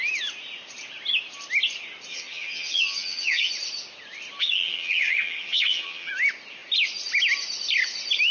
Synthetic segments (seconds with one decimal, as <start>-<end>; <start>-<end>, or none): 2.1-3.5; 4.4-6.1